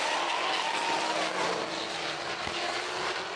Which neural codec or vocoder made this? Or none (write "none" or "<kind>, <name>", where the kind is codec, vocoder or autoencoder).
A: none